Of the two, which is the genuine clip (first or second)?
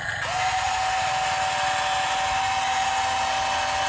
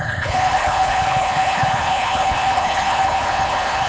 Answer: first